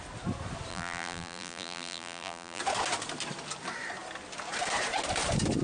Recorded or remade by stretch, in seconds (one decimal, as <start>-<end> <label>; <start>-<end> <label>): 0.0-0.7 recorded; 0.7-2.6 remade; 2.6-5.6 recorded